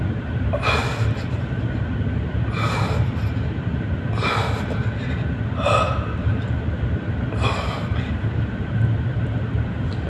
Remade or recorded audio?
recorded